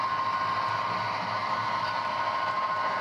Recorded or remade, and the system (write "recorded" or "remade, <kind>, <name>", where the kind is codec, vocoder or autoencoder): recorded